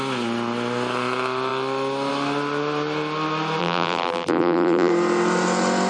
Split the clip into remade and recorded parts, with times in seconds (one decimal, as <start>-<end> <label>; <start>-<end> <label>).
0.0-3.6 recorded; 3.6-4.9 remade; 4.9-5.9 recorded